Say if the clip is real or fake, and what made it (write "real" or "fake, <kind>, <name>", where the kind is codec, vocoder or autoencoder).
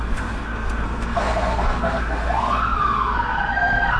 fake, codec, SNAC